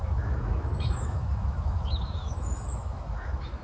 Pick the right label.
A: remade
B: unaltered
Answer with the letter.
A